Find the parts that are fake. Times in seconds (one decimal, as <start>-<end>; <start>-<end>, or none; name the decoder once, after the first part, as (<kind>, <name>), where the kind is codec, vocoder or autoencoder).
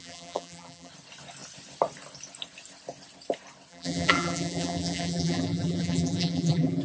0.0-0.9 (vocoder, BigVGAN v2); 3.7-6.8